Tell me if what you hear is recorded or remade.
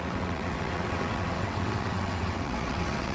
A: remade